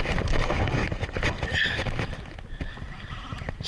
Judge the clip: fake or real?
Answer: real